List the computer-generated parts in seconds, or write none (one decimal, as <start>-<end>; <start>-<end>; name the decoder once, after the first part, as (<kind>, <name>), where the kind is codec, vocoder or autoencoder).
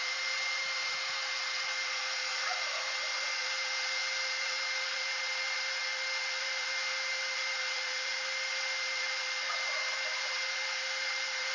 0.0-5.8 (vocoder, BigVGAN v2); 6.4-11.5